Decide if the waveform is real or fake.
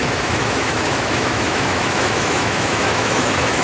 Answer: fake